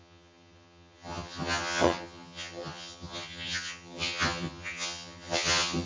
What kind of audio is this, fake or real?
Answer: fake